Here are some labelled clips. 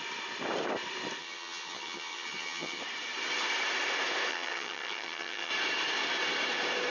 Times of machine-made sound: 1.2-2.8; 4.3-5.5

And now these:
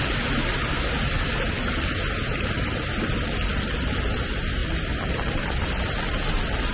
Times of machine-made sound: none

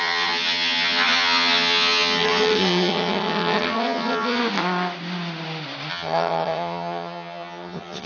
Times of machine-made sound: 0.0-4.4; 5.9-8.1

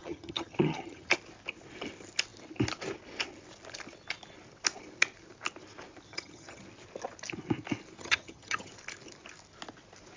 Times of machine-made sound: 0.0-1.1; 6.1-6.6; 8.0-8.7